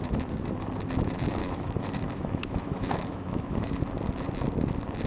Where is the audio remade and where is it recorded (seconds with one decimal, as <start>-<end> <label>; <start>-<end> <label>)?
0.0-1.4 recorded; 1.4-3.8 remade; 3.8-5.1 recorded